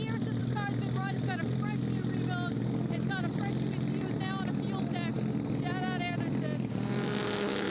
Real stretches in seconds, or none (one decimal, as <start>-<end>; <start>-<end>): 0.0-7.7